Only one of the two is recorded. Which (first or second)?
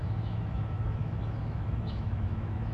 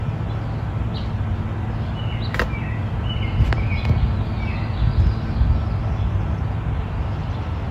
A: second